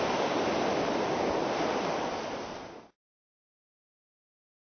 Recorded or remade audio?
recorded